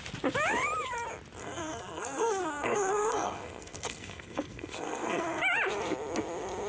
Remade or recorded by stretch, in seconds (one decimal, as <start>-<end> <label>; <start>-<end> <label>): 0.0-1.4 recorded; 1.4-5.4 remade; 5.4-6.7 recorded